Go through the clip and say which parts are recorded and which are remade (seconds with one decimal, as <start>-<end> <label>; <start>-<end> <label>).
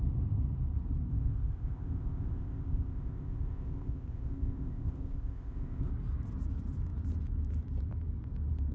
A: 0.0-1.1 recorded; 1.1-5.9 remade; 5.9-8.7 recorded